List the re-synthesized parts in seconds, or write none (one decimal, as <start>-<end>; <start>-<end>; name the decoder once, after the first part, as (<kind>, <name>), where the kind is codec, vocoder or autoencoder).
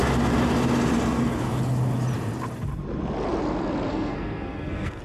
3.9-5.0 (codec, SNAC)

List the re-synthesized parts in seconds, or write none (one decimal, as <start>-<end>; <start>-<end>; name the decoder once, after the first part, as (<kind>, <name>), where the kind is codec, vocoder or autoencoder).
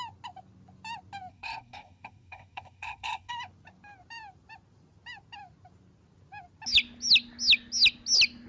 1.3-3.3 (codec, SNAC)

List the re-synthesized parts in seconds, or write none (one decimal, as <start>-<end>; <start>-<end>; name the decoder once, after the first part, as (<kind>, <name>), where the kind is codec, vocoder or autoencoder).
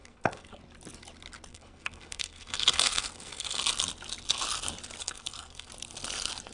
0.0-0.6 (codec, SNAC); 1.5-3.6; 5.0-5.7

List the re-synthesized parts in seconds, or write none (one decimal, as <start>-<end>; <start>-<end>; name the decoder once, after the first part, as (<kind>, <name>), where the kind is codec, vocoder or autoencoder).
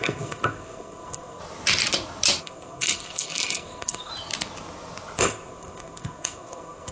0.0-1.4 (codec, SNAC); 2.4-4.1; 5.2-6.9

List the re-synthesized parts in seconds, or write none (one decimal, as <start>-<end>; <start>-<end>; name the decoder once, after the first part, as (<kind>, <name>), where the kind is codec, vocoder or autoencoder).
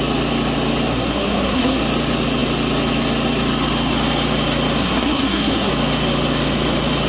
0.9-1.8 (codec, SNAC); 4.8-5.7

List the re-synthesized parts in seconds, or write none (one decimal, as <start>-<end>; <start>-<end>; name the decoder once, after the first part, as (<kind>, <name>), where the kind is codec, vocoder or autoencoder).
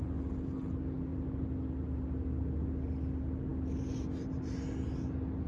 none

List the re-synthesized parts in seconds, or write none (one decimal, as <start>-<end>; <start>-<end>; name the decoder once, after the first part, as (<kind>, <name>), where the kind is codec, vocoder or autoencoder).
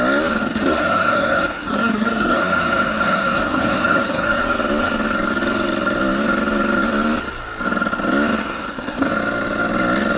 0.4-4.4 (codec, SNAC); 8.4-9.1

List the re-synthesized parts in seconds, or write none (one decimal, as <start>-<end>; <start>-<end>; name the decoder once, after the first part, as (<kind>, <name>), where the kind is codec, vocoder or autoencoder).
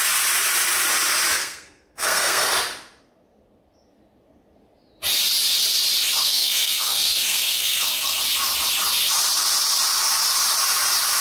1.4-2.5 (codec, SNAC); 6.2-8.2